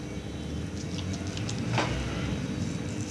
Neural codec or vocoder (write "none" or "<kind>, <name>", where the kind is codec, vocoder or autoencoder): none